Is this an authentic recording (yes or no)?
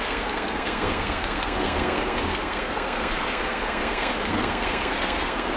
no